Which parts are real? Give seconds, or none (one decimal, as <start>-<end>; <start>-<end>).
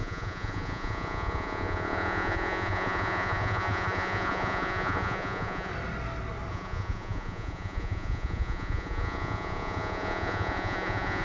5.7-6.5